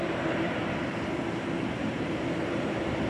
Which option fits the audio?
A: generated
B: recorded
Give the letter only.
A